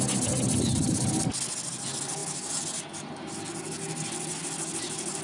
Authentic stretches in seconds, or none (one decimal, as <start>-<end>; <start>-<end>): 0.0-5.2